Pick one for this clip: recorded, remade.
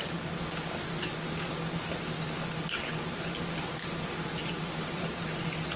recorded